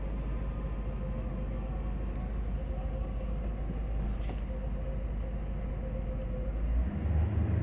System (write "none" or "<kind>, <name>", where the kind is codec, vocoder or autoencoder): none